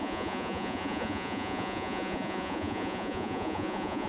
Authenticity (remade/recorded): remade